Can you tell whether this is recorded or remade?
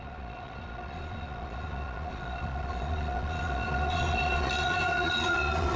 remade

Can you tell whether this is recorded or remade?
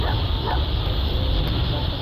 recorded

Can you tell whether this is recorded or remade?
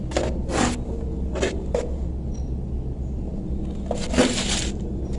recorded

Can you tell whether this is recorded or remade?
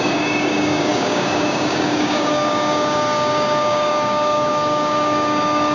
remade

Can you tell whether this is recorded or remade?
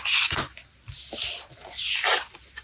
recorded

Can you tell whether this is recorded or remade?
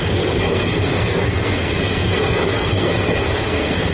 remade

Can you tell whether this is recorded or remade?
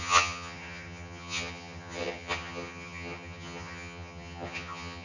remade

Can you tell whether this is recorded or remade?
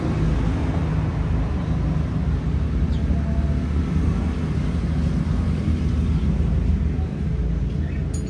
recorded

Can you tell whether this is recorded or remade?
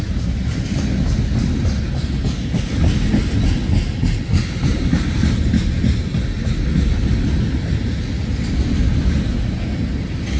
recorded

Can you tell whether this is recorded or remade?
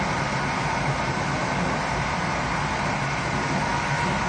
recorded